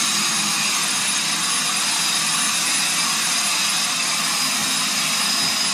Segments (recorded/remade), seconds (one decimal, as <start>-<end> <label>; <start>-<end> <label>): 0.0-5.7 recorded